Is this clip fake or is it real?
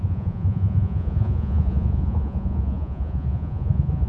fake